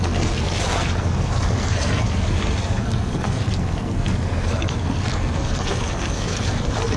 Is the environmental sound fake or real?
fake